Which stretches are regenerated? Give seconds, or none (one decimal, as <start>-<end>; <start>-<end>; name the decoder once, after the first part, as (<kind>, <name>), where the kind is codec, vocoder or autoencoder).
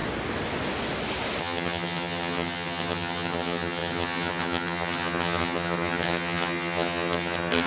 1.4-7.7 (vocoder, HiFi-GAN)